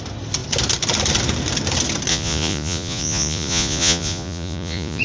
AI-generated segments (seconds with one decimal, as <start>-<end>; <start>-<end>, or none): 2.1-5.0